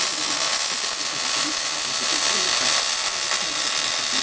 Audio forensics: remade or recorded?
recorded